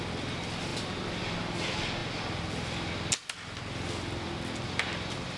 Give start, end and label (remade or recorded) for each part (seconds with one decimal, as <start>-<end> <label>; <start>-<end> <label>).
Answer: 0.0-5.4 recorded